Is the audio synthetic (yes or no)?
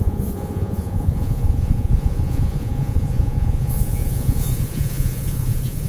yes